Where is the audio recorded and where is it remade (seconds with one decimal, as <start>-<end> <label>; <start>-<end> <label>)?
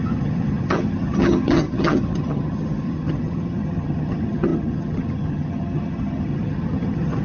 0.0-7.2 remade